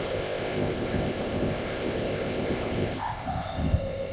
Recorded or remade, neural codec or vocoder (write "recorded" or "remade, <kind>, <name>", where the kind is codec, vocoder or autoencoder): remade, codec, ZipCodec